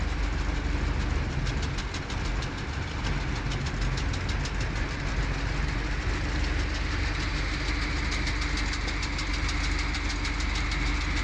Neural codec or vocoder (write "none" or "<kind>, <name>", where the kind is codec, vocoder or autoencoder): none